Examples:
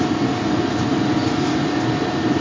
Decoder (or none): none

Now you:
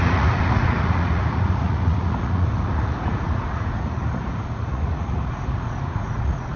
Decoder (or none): vocoder, Vocos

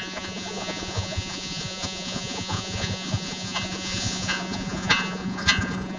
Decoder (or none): vocoder, Vocos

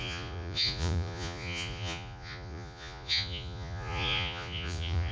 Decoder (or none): vocoder, Vocos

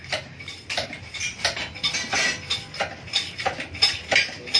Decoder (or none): none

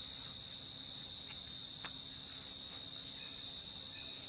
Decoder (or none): none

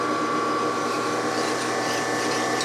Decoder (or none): none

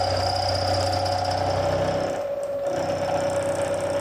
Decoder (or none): none